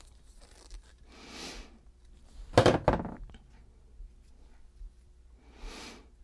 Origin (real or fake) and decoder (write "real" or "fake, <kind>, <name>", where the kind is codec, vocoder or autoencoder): real